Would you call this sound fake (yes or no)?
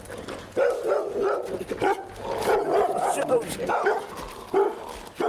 no